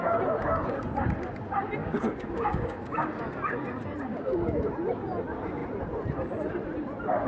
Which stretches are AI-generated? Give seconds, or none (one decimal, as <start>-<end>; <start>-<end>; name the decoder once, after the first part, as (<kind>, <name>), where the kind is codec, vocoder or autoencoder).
1.8-3.2 (codec, DAC); 4.1-4.6